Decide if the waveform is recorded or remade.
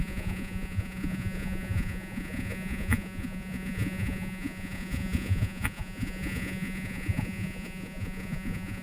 remade